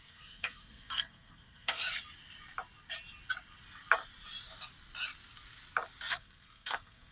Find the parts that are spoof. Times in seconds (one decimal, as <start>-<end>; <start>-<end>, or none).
0.0-1.8; 6.1-7.1